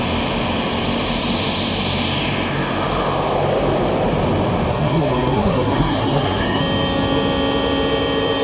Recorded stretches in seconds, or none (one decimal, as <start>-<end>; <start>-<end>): 0.0-4.7; 6.6-8.4